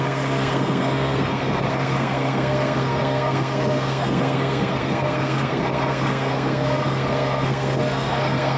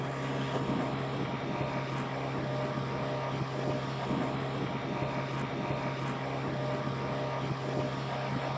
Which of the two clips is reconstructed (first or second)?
first